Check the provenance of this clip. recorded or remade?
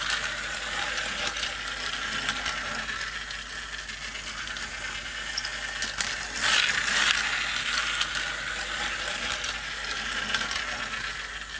recorded